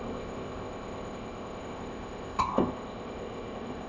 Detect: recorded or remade remade